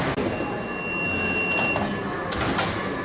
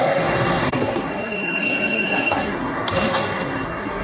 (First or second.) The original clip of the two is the first